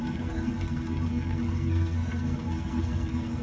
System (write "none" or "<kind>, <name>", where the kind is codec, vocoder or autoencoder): codec, SNAC